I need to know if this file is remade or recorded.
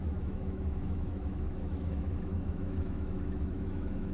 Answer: remade